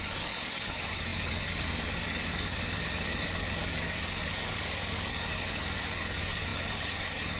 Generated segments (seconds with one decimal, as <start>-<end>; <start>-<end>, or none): 0.0-7.4